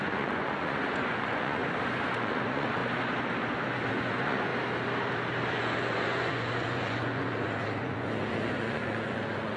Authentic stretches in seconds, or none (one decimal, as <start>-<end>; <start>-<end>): 1.6-2.1; 2.8-3.9; 4.5-5.5